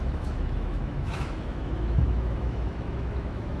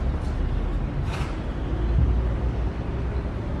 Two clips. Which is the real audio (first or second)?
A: second